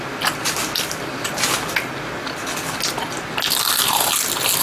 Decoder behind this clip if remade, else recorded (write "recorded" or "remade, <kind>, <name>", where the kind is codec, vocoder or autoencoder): recorded